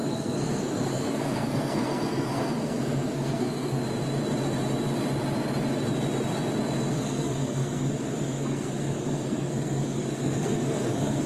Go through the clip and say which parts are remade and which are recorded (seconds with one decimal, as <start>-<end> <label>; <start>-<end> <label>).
0.0-3.8 remade; 3.8-6.9 recorded; 6.9-11.3 remade